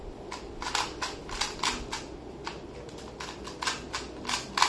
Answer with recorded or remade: recorded